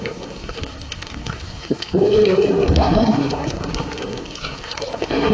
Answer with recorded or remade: remade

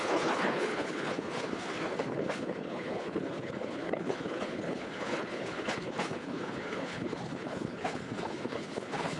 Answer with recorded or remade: remade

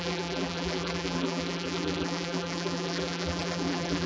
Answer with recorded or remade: remade